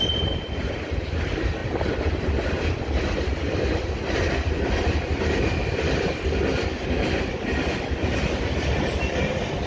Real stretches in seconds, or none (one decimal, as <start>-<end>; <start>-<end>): 0.0-9.7